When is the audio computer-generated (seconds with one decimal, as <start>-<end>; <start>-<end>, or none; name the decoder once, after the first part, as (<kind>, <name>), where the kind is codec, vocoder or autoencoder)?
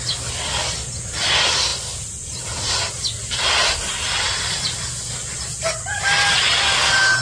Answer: none